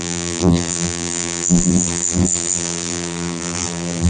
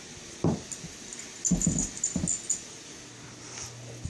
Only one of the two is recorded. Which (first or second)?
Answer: second